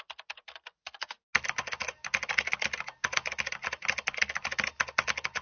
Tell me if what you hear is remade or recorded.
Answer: recorded